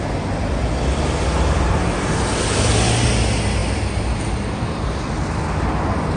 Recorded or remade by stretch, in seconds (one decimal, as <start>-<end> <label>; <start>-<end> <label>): 0.0-6.2 recorded

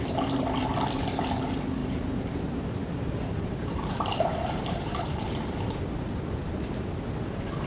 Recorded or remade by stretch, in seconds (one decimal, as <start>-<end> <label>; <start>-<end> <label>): 0.0-1.8 recorded; 1.8-3.9 remade; 3.9-4.3 recorded; 4.3-5.4 remade; 5.4-7.7 recorded

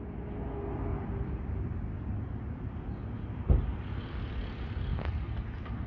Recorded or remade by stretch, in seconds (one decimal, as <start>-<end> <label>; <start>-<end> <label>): 0.0-0.9 recorded; 0.9-2.9 remade; 2.9-3.7 recorded; 3.7-4.3 remade; 4.3-5.9 recorded

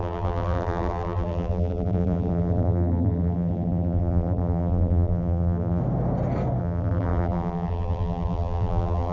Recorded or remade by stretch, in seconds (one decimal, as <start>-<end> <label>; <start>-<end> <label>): 0.0-5.8 remade; 5.8-6.6 recorded; 6.6-9.1 remade

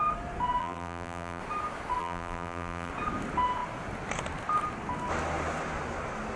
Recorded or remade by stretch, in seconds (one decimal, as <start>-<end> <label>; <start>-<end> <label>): 0.0-0.6 recorded; 0.6-1.4 remade; 1.4-2.0 recorded; 2.0-2.9 remade; 2.9-6.4 recorded

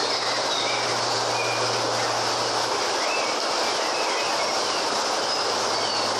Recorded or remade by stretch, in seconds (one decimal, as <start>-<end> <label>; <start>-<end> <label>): 0.0-6.2 recorded